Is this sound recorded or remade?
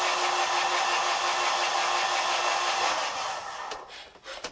recorded